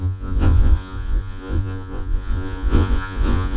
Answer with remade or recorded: remade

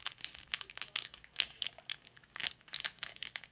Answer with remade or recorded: remade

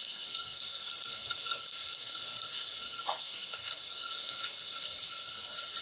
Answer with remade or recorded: remade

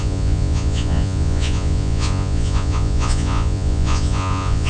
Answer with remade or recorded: remade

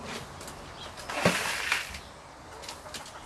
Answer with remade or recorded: recorded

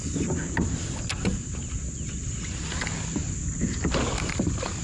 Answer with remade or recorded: recorded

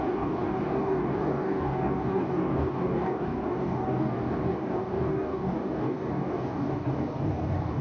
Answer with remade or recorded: remade